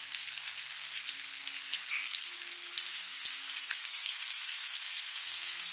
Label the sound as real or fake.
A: fake